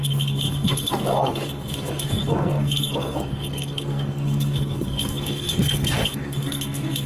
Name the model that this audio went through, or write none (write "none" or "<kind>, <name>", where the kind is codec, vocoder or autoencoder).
codec, SNAC